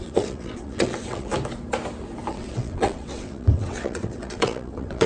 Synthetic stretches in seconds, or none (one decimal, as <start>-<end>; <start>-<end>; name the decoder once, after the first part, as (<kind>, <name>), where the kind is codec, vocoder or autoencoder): 0.0-1.3 (vocoder, WaveNeXt); 2.3-5.1